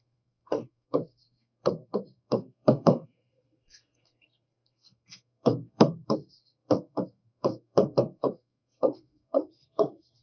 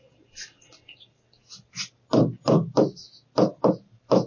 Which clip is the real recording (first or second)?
second